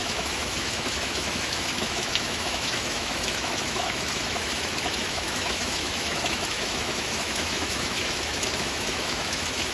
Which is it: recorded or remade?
remade